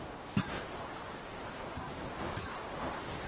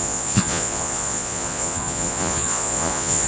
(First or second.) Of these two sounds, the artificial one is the second